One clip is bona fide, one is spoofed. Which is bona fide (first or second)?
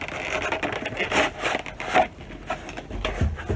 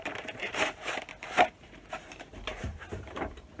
first